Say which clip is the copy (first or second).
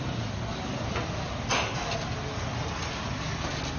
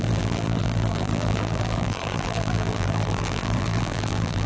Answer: second